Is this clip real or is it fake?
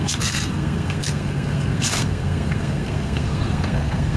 fake